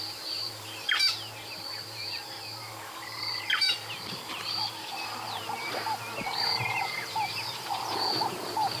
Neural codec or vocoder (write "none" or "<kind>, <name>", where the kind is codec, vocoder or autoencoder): vocoder, BigVGAN v2